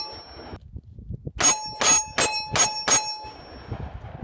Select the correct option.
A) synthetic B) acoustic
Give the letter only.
B